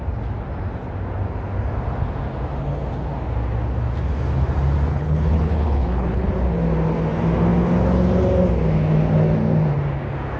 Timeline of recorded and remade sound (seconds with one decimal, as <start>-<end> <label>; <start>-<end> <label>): 0.0-4.9 recorded; 4.9-6.3 remade; 6.3-10.4 recorded